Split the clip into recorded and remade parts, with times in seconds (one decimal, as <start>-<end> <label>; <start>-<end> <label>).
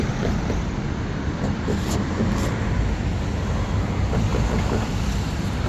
0.0-5.7 recorded